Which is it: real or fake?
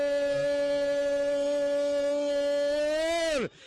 real